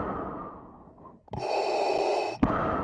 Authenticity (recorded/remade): recorded